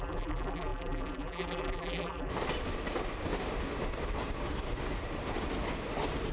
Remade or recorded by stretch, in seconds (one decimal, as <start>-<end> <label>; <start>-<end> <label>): 0.0-2.3 remade; 2.3-6.3 recorded